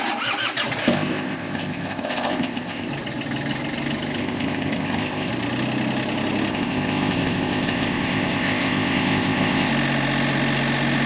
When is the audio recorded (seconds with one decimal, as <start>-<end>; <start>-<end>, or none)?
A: 0.0-0.8; 2.9-4.2; 5.3-6.5; 9.7-11.1